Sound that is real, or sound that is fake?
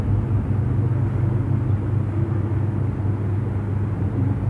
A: real